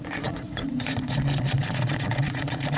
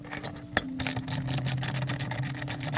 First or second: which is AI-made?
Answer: first